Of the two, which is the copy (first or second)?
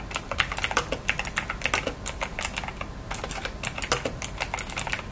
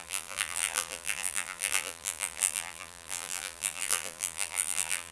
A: second